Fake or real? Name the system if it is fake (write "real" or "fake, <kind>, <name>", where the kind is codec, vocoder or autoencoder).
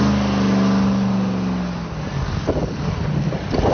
real